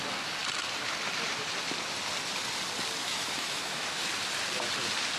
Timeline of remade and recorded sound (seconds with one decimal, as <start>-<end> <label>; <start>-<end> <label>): 0.0-3.0 recorded; 3.0-4.0 remade; 4.0-5.2 recorded